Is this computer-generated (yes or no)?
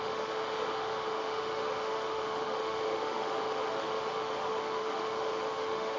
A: yes